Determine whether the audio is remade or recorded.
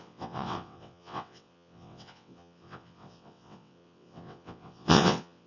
remade